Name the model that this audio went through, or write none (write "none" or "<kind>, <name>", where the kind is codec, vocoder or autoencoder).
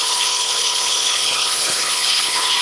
codec, HILCodec